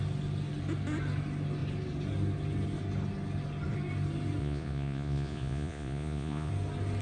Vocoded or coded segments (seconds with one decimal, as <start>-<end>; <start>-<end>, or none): 4.4-6.5